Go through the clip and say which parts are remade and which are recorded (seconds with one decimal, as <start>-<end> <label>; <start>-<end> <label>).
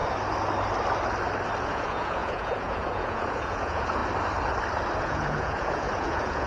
0.0-1.6 recorded; 1.6-4.0 remade; 4.0-5.0 recorded; 5.0-6.5 remade